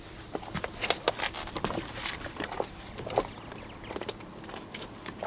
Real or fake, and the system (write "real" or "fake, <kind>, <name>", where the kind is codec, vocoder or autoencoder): real